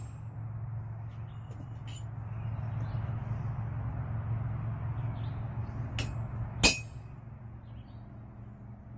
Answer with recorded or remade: recorded